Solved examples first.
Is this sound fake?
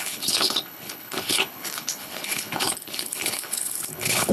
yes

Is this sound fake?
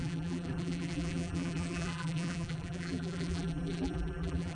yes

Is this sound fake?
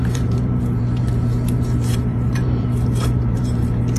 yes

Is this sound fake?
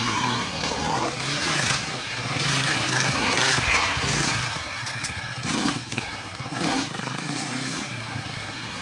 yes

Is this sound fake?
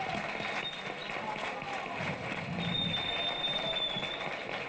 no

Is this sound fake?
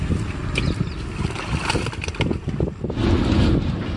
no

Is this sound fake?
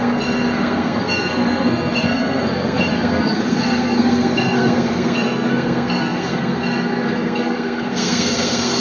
yes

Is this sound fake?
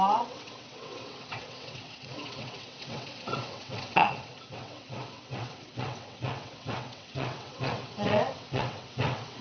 yes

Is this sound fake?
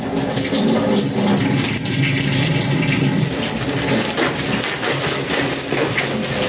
no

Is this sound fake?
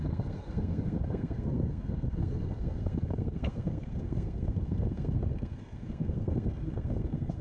yes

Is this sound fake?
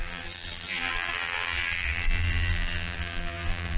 yes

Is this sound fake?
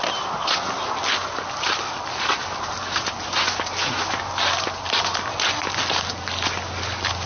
no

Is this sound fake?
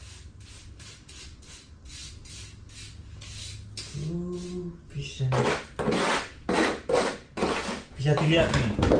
no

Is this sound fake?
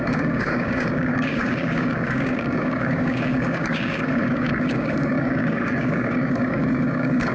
yes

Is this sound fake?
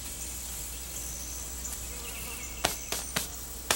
no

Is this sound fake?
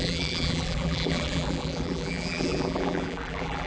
yes